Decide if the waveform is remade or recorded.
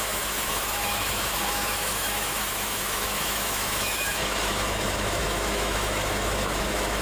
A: remade